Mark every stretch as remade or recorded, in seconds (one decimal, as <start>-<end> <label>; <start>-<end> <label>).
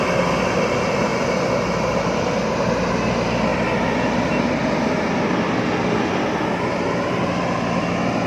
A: 0.0-8.3 recorded